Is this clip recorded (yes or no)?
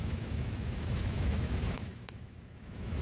no